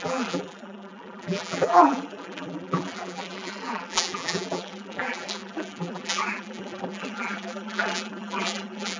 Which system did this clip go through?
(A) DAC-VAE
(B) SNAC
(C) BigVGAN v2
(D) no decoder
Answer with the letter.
C